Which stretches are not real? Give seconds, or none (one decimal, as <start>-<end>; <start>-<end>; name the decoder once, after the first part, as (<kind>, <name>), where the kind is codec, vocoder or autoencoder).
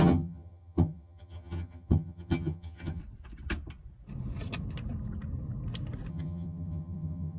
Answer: 0.0-3.0 (vocoder, HiFi-GAN); 6.1-7.4